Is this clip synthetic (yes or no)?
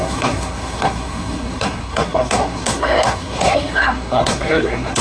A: yes